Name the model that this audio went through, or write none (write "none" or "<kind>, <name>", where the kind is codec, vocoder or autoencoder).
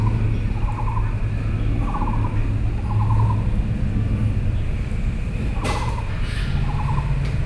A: none